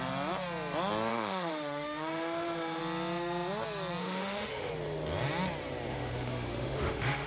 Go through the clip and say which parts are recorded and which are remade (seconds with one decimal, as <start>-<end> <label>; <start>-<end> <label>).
0.0-1.1 recorded; 1.1-2.8 remade; 2.8-4.0 recorded; 4.0-4.7 remade; 4.7-5.9 recorded; 5.9-7.3 remade